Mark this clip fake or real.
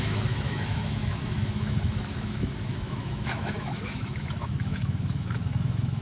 fake